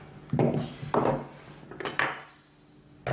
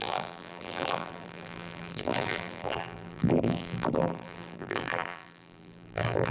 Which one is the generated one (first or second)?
second